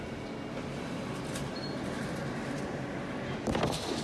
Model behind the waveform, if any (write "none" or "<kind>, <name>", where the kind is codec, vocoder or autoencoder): none